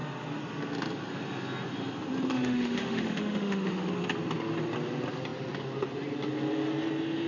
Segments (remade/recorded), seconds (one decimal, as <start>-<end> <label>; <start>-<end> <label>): 0.0-2.3 recorded; 2.3-3.9 remade; 3.9-7.3 recorded